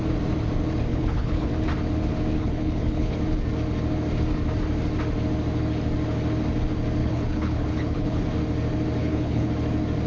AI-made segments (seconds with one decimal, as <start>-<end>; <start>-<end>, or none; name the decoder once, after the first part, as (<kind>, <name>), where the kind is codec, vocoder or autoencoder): 0.9-1.5 (codec, HILCodec); 2.4-3.2; 7.0-8.2; 9.0-9.5